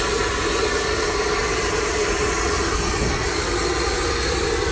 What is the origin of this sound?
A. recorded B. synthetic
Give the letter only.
A